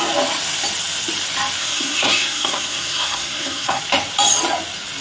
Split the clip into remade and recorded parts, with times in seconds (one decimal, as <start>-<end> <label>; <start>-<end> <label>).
0.0-1.6 recorded; 1.6-3.8 remade; 3.8-5.0 recorded